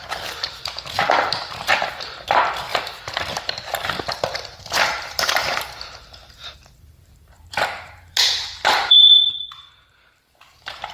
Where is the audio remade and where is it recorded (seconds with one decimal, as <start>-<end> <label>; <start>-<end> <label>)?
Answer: 0.0-10.9 remade

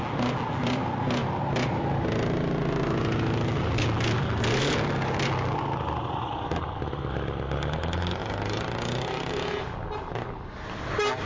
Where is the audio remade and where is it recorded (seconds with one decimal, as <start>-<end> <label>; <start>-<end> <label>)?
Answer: 0.0-8.2 recorded; 8.2-9.3 remade; 9.3-11.3 recorded

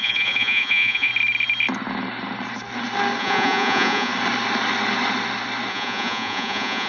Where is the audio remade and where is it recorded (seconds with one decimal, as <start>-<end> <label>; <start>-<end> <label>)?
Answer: 0.0-1.1 remade; 1.1-3.2 recorded; 3.2-4.1 remade; 4.1-5.7 recorded; 5.7-6.9 remade

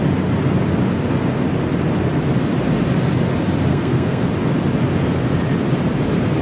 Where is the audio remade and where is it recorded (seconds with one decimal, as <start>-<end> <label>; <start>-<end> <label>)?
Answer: 0.0-3.7 recorded; 3.7-4.3 remade; 4.3-6.4 recorded

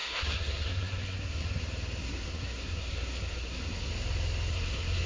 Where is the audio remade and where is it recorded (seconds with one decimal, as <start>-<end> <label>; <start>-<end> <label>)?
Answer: 0.0-1.6 remade; 1.6-2.0 recorded; 2.0-3.9 remade; 3.9-4.5 recorded; 4.5-5.1 remade